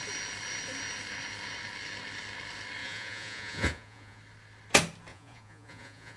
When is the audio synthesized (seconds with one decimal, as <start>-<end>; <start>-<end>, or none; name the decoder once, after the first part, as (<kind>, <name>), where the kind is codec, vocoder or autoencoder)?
2.8-4.2 (vocoder, Vocos); 5.1-6.2